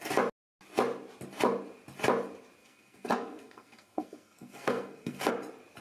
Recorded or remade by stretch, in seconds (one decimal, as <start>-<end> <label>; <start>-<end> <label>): 0.0-2.6 recorded; 2.6-5.3 remade; 5.3-5.8 recorded